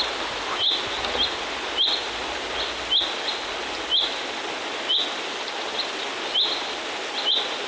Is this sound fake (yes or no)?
no